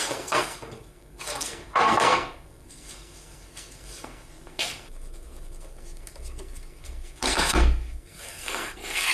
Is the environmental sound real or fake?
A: fake